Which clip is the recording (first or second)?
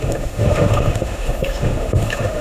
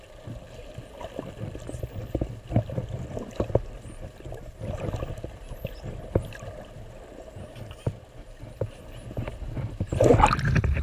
second